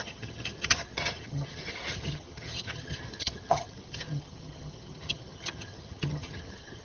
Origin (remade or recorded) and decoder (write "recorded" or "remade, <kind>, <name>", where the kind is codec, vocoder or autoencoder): remade, vocoder, HiFi-GAN